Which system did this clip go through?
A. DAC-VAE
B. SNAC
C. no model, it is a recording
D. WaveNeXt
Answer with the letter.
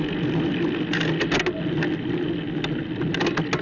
C